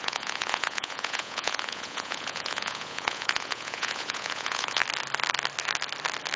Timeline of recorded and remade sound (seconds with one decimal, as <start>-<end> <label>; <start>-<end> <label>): 0.0-4.8 remade; 4.8-6.4 recorded